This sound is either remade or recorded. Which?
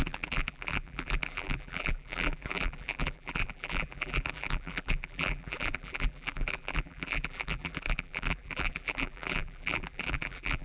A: remade